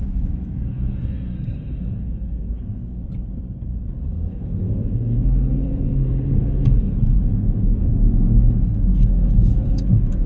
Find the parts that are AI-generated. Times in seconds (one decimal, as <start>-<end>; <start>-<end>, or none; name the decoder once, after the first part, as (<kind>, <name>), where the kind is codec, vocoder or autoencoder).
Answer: 0.0-3.0 (codec, SNAC); 4.1-10.3